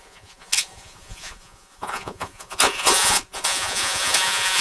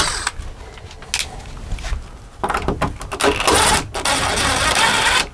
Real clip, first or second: second